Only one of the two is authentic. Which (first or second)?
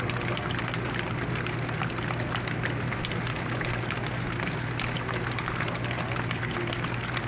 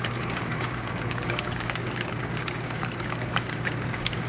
first